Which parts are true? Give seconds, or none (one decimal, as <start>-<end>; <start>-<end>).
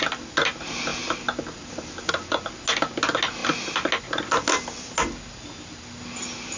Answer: 0.0-6.6